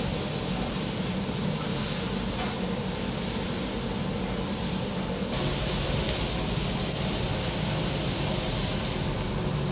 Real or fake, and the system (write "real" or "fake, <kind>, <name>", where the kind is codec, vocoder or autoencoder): real